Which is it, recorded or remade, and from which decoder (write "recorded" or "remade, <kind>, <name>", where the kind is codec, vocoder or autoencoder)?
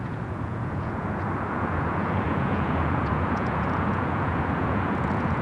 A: remade, vocoder, Vocos